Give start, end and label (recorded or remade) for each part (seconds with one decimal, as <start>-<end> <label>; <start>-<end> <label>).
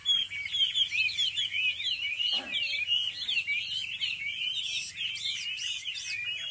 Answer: 0.0-6.5 recorded